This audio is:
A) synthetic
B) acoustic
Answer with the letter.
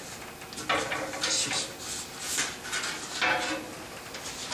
B